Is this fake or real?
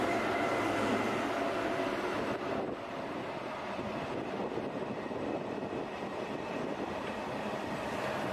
real